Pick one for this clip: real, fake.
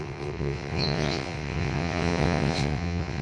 fake